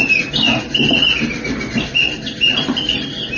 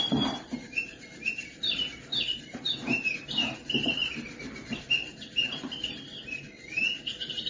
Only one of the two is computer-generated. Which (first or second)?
second